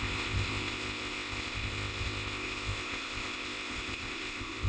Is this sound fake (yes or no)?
yes